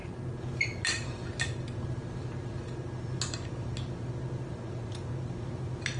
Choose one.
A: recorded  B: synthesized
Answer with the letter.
A